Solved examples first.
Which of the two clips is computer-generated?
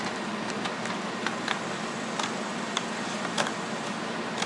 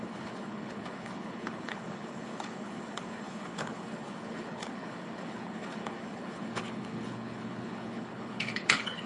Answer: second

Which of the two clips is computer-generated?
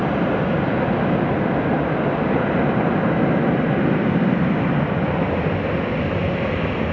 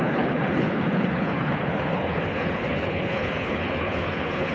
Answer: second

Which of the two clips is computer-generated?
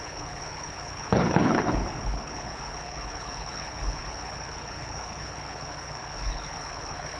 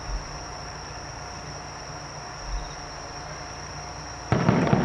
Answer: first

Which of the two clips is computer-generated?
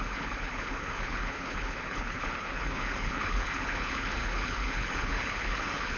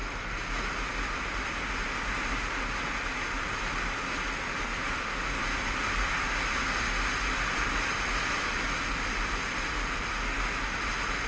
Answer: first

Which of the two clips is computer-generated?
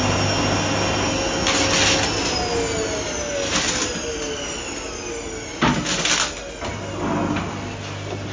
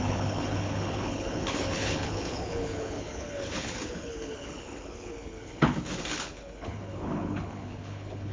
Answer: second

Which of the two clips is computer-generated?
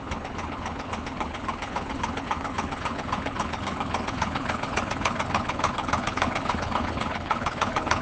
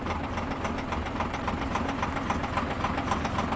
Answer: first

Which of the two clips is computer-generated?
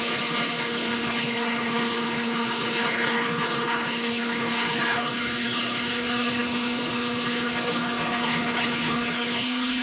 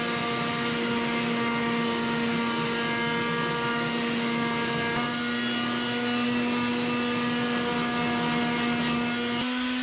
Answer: first